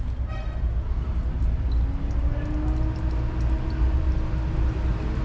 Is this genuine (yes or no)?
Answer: yes